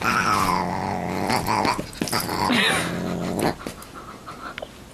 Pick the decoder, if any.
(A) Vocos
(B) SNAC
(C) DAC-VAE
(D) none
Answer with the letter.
D